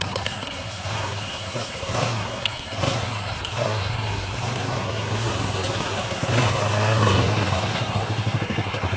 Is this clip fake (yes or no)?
yes